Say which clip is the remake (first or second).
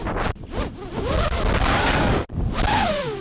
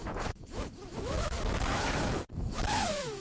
second